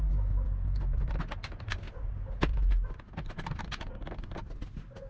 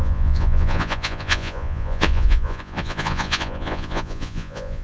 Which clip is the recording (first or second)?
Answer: first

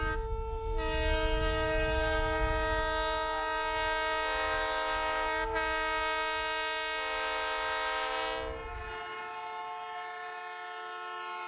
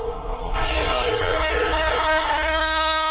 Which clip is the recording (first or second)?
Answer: first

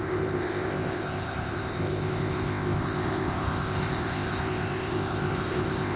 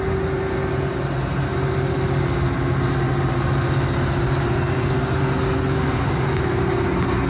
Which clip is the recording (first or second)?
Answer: second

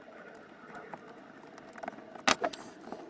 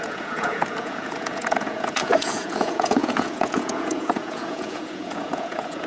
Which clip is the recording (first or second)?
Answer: first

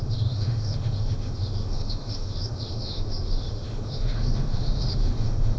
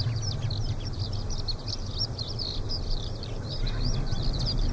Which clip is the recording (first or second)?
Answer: second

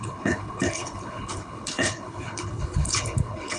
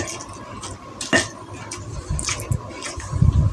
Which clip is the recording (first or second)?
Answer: second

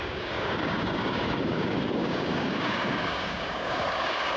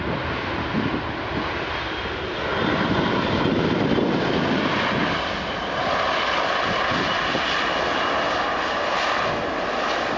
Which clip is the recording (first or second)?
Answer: second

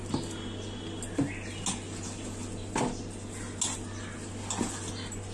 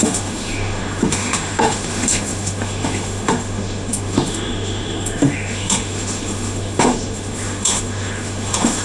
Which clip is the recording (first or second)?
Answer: first